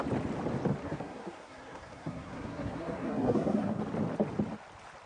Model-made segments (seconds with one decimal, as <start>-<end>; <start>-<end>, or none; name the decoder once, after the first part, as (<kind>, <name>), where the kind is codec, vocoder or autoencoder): 0.8-3.8 (codec, SNAC)